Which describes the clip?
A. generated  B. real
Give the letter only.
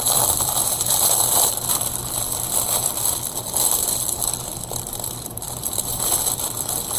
A